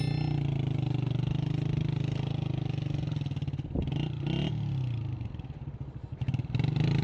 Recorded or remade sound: recorded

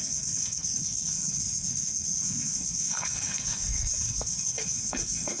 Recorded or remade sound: remade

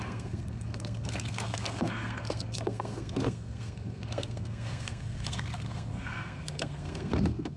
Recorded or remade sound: remade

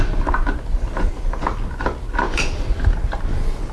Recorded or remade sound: recorded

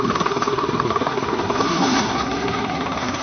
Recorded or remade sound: remade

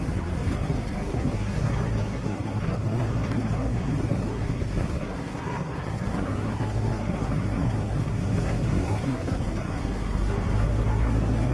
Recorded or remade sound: remade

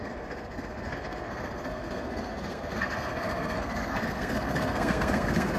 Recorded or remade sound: remade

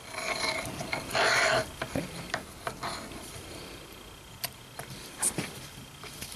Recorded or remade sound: recorded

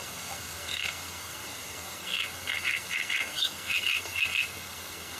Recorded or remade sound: remade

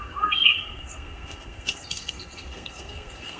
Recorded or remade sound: remade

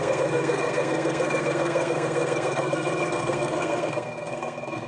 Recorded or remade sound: remade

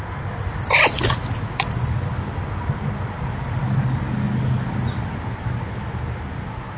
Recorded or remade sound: recorded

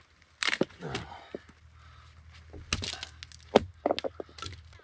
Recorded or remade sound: recorded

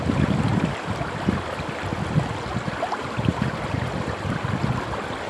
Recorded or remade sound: recorded